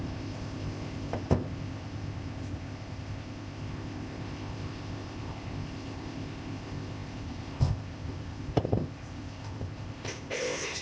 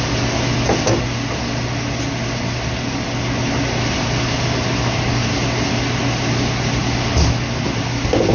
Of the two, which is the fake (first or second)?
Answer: first